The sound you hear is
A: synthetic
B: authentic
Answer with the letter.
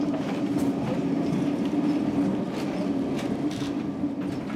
B